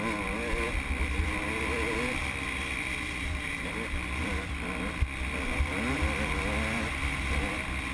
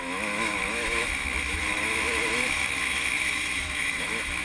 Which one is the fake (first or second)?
second